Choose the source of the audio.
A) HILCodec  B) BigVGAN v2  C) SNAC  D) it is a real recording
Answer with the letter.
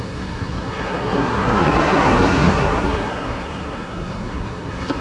C